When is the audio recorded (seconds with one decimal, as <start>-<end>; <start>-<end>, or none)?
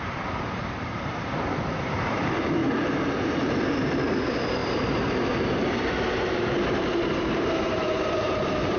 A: 2.6-3.2